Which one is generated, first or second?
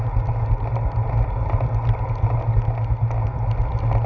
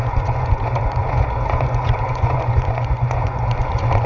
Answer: second